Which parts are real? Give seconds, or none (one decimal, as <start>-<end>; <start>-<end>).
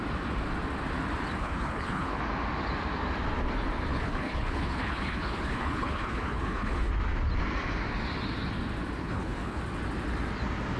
0.0-1.4; 2.2-3.9; 6.9-9.0; 9.6-10.8